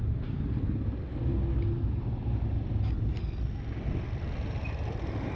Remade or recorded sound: recorded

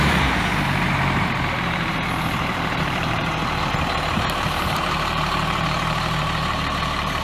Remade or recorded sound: remade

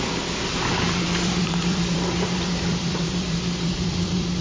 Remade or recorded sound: remade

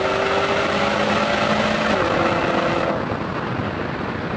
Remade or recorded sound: recorded